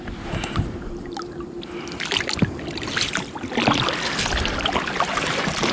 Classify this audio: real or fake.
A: real